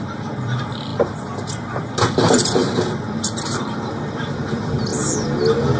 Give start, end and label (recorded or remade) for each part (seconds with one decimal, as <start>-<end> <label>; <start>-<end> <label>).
0.0-4.9 remade; 4.9-5.8 recorded